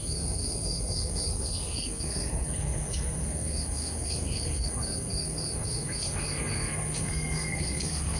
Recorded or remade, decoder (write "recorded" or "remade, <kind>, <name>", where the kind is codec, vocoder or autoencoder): remade, codec, SNAC